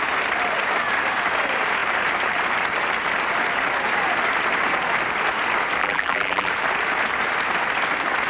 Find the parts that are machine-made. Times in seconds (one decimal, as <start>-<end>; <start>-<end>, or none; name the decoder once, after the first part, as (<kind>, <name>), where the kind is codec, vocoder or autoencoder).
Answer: 5.8-6.5 (vocoder, BigVGAN v2)